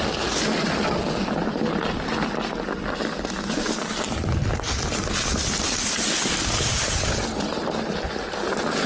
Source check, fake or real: real